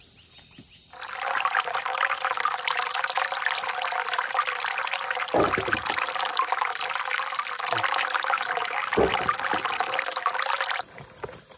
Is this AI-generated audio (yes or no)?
no